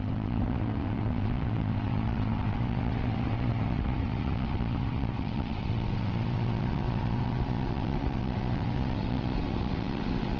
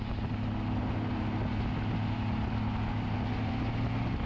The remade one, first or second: first